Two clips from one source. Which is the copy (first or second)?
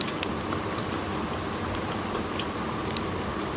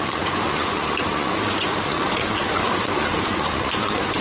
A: second